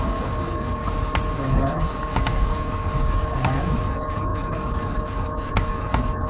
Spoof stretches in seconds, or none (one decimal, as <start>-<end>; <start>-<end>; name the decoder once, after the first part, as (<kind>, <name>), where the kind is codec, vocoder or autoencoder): 0.0-0.8 (codec, DAC); 1.3-6.3